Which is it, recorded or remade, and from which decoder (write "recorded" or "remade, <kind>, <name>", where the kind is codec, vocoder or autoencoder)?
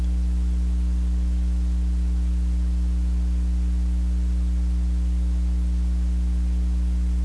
recorded